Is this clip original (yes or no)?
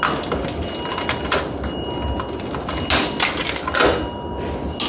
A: yes